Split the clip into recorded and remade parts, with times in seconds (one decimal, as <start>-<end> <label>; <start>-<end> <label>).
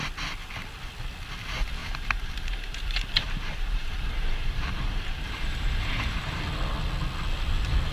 0.0-1.8 recorded; 1.8-6.4 remade; 6.4-7.9 recorded